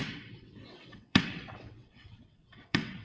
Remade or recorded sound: remade